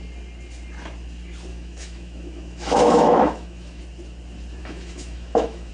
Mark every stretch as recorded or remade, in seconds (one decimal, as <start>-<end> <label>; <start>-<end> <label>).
0.0-1.5 recorded; 1.5-3.8 remade; 3.8-4.6 recorded; 4.6-5.7 remade